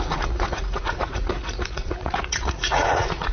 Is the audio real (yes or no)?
no